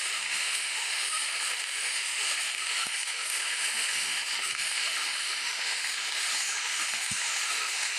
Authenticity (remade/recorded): remade